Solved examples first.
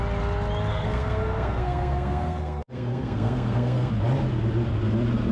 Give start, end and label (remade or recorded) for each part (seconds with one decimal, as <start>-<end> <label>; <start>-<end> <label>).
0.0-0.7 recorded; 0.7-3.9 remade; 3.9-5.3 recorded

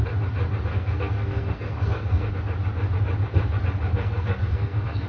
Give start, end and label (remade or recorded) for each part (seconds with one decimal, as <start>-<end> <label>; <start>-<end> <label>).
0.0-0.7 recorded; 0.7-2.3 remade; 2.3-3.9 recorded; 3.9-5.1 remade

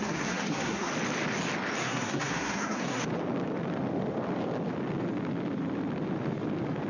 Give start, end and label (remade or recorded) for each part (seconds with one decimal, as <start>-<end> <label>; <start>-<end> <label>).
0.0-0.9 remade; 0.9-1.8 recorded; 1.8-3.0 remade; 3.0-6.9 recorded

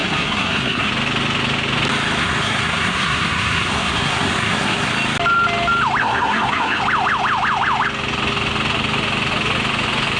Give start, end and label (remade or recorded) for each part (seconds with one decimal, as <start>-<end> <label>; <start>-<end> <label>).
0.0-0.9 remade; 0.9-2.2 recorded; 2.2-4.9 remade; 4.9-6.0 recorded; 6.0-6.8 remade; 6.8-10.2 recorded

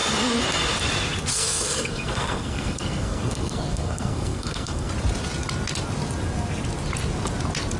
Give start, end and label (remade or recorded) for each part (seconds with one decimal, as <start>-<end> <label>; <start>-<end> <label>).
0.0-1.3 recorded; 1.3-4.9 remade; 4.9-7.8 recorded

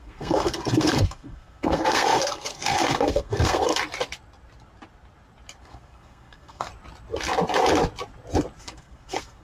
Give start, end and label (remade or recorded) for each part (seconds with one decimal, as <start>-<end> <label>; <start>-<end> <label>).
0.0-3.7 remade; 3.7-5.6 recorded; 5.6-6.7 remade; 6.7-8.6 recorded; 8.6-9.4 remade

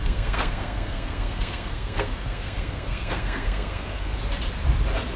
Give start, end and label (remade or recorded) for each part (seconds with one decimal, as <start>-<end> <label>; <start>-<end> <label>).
0.0-4.1 remade; 4.1-5.2 recorded